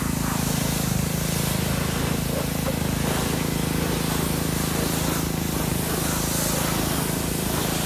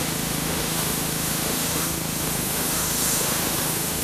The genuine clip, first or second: first